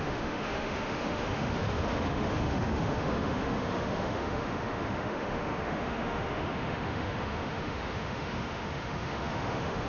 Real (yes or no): no